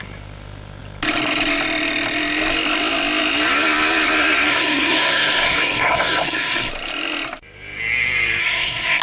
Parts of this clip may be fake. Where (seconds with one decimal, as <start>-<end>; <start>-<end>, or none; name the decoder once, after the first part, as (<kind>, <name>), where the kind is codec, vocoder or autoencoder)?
4.5-6.7 (codec, SNAC); 8.4-9.0